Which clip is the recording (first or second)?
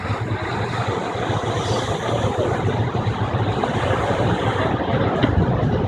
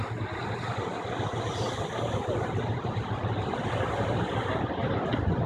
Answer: second